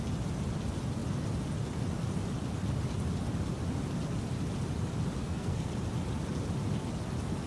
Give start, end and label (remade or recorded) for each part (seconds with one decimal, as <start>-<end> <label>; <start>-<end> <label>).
0.0-5.2 recorded; 5.2-5.7 remade; 5.7-7.5 recorded